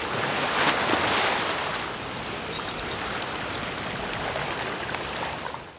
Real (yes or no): yes